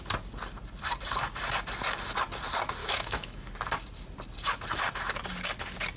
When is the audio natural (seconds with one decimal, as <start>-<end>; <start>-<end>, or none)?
0.0-2.8; 3.5-6.0